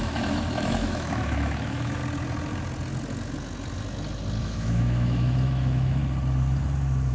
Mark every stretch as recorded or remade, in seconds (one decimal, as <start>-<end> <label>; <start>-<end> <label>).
0.0-2.0 remade; 2.0-4.4 recorded; 4.4-6.0 remade; 6.0-7.1 recorded